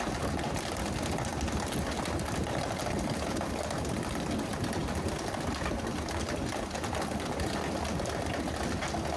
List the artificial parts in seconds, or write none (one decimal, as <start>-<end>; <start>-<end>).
none